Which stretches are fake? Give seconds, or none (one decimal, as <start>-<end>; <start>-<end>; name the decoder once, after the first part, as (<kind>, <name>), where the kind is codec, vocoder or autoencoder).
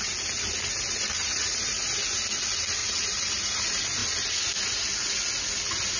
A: 1.2-1.7 (vocoder, Vocos); 2.8-3.6